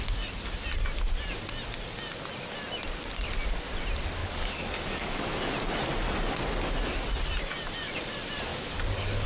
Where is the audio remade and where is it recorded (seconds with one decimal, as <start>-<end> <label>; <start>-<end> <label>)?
0.0-4.2 recorded; 4.2-5.2 remade; 5.2-8.5 recorded; 8.5-9.3 remade